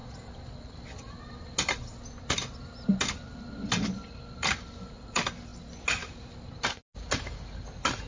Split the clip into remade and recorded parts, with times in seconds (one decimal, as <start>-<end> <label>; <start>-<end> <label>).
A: 0.0-4.9 recorded; 4.9-5.5 remade; 5.5-8.1 recorded